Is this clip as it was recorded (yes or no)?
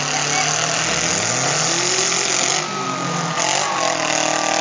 yes